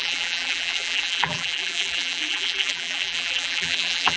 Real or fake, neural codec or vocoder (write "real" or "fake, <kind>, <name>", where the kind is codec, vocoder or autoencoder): fake, vocoder, BigVGAN v2